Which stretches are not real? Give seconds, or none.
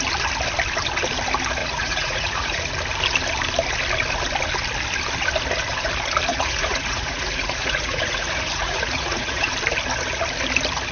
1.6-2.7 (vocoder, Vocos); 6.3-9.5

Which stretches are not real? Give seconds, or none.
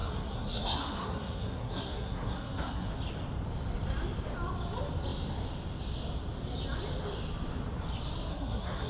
0.0-2.9 (codec, SNAC); 8.3-8.9